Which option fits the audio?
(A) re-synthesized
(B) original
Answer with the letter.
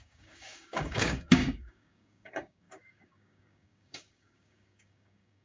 A